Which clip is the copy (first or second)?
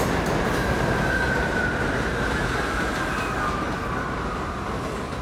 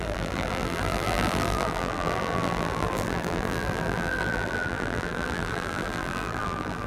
second